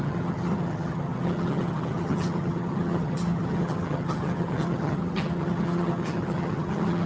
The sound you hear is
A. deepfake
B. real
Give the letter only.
A